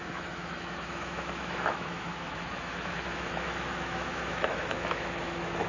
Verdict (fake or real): fake